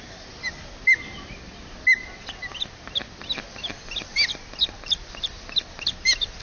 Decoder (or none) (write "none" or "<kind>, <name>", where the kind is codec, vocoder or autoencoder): none